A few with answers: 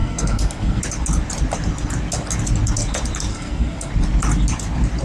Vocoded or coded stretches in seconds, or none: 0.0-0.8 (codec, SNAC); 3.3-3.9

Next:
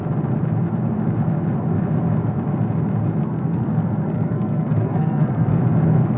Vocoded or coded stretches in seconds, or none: 3.2-5.6 (codec, SNAC)